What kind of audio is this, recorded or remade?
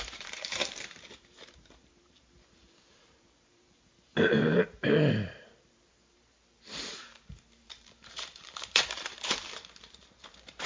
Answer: remade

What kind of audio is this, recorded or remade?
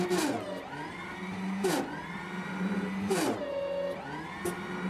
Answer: recorded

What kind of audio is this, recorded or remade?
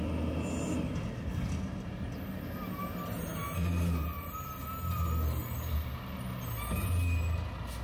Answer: recorded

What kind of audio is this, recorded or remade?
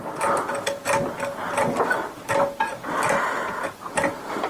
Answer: recorded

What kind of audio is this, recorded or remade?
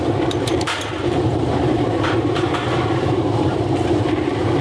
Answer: remade